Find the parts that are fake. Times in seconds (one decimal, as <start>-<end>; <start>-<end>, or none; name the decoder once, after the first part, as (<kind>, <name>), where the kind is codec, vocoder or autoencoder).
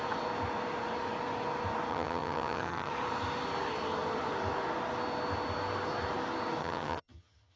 1.9-2.9 (vocoder, HiFi-GAN); 6.6-7.6